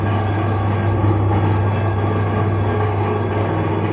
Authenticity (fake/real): real